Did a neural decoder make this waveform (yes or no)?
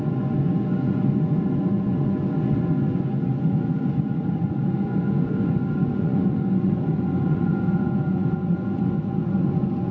yes